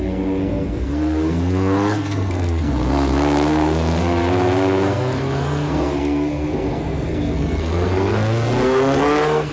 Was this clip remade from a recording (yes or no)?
yes